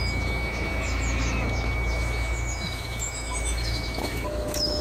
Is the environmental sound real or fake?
fake